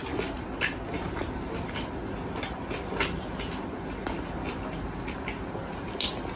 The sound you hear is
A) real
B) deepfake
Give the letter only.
A